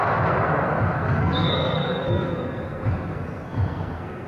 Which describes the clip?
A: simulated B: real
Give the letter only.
A